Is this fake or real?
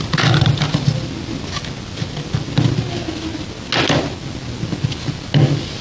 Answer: real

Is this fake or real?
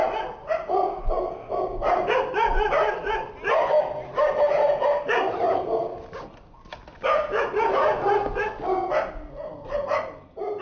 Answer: real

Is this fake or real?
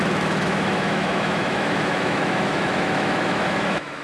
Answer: fake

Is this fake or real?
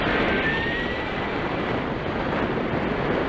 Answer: real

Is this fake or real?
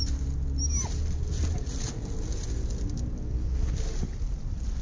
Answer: real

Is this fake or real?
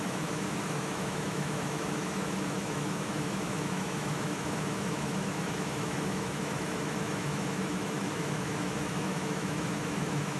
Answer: fake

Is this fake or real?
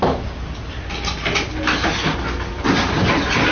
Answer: real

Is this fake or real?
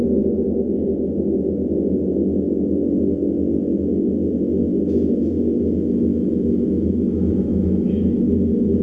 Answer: fake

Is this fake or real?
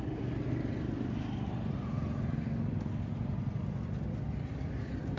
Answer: real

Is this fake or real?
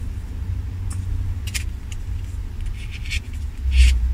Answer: real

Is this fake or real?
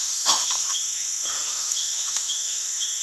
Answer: fake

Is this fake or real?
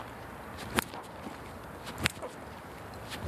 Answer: real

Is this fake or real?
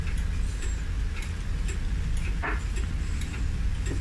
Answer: real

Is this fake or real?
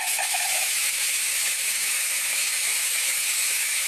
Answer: fake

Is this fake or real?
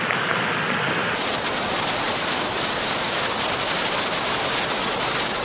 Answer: real